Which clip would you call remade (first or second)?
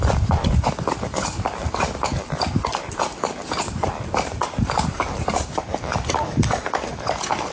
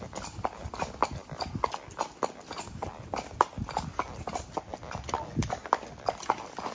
first